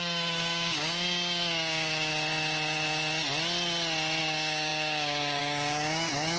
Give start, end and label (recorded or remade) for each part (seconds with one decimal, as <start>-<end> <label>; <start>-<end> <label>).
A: 0.0-2.1 remade; 2.1-4.2 recorded; 4.2-6.4 remade